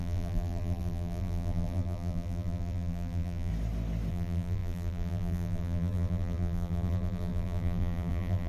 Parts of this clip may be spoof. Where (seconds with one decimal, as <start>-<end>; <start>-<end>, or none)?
0.0-3.5; 4.1-8.5